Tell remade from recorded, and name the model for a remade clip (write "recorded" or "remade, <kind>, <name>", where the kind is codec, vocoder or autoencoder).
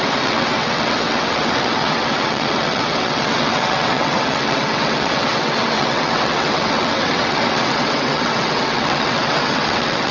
remade, vocoder, WaveNeXt